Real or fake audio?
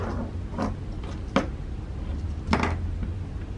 real